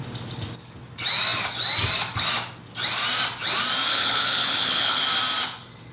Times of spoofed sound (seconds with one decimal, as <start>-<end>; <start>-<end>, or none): 3.9-5.0